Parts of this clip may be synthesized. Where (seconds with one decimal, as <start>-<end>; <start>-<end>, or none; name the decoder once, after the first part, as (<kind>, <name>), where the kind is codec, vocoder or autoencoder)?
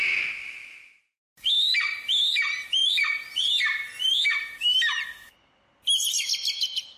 2.3-2.8 (vocoder, BigVGAN v2)